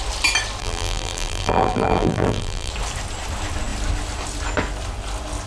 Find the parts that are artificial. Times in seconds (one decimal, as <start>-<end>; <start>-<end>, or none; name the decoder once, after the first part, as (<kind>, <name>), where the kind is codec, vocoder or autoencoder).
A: 0.6-2.7 (vocoder, BigVGAN v2)